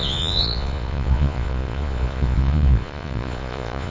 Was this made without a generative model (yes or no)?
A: no